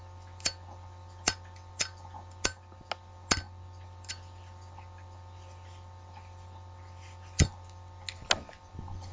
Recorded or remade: recorded